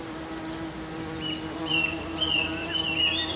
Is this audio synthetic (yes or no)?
no